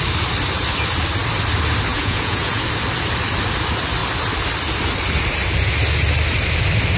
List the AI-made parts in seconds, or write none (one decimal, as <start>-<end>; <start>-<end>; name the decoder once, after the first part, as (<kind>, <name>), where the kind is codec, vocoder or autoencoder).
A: 1.9-2.6 (vocoder, Vocos)